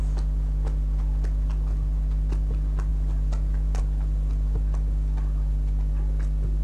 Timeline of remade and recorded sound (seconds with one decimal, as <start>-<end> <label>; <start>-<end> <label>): 0.0-6.6 recorded